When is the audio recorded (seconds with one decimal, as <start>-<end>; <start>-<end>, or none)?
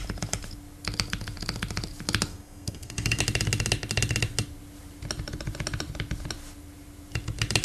0.0-2.3; 3.2-7.6